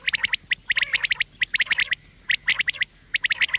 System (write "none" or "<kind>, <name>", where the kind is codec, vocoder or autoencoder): none